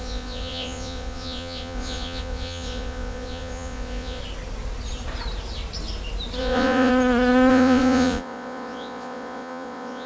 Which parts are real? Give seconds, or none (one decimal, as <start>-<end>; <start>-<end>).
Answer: 4.2-6.4; 6.9-7.5